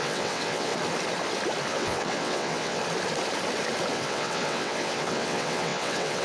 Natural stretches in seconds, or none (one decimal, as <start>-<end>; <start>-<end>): 0.7-1.7; 2.8-3.9